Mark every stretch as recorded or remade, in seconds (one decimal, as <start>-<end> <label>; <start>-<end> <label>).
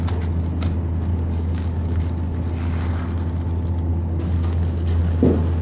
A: 0.0-1.1 recorded; 1.1-2.0 remade; 2.0-3.9 recorded; 3.9-5.0 remade; 5.0-5.6 recorded